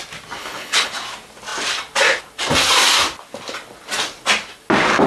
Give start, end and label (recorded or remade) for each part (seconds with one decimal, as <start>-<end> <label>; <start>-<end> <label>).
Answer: 0.0-0.4 recorded; 0.4-0.9 remade; 0.9-5.1 recorded